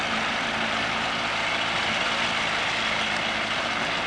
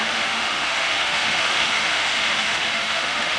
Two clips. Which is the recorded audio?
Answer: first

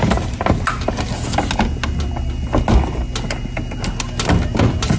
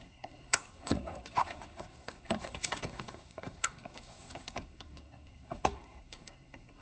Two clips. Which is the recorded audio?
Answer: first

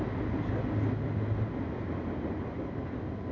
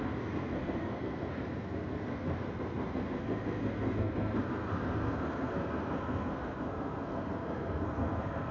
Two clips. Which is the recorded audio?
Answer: first